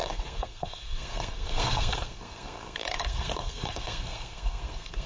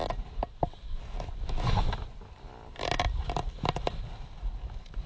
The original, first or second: second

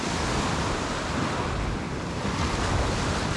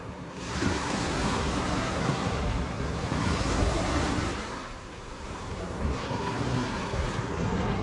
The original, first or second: first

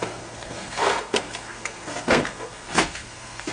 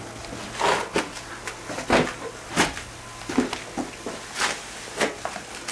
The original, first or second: second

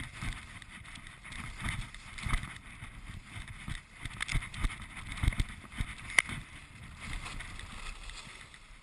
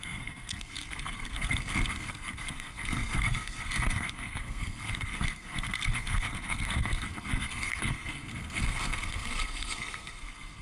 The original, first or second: first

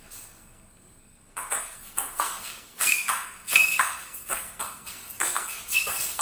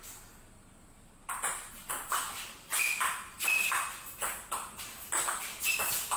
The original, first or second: second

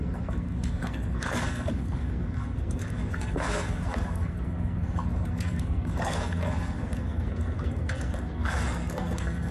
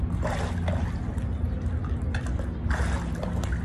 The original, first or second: second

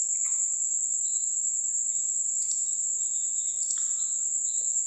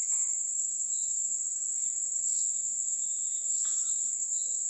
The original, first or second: first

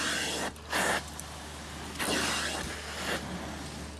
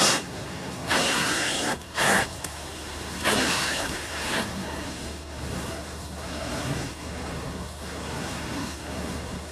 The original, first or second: first